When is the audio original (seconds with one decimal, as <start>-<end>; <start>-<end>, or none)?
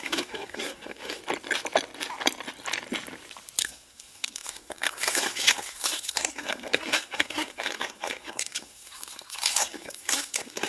1.2-3.6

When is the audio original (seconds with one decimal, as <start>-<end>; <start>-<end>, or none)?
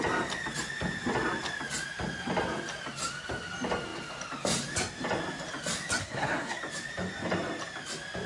0.0-6.0; 6.6-8.3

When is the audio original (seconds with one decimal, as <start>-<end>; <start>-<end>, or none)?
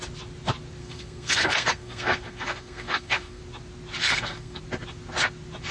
0.0-0.8; 3.4-4.0; 4.6-5.7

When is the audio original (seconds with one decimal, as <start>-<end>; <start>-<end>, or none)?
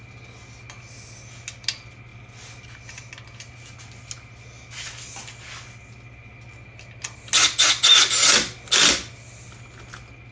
0.0-10.3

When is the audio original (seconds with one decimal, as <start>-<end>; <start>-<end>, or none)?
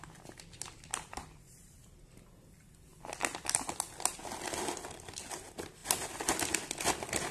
0.0-7.3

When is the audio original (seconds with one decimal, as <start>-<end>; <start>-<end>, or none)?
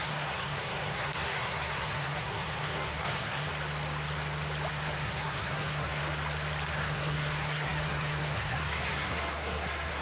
3.5-4.7; 6.0-6.7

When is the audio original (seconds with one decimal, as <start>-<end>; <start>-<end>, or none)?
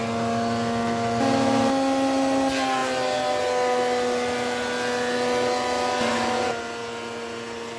0.0-7.8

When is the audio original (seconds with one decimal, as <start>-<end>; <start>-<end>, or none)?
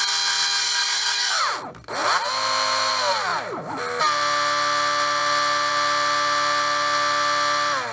0.0-0.6; 1.4-7.9